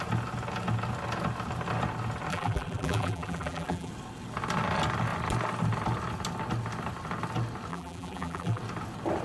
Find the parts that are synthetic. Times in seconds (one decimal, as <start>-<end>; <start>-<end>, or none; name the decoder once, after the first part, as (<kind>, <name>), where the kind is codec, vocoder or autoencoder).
2.3-3.9 (vocoder, BigVGAN v2); 7.7-8.6